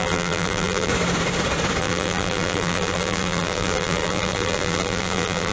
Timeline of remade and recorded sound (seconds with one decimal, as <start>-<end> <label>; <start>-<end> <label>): 0.0-0.9 remade; 0.9-1.8 recorded; 1.8-5.5 remade